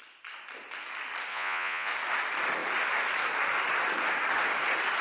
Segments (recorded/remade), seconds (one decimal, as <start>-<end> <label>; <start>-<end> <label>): 0.0-1.3 recorded; 1.3-1.9 remade; 1.9-5.0 recorded